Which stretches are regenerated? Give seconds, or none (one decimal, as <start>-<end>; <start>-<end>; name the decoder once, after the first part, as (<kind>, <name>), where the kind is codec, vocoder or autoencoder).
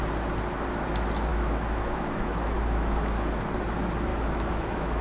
1.3-3.4 (autoencoder, DAC-VAE); 4.1-5.0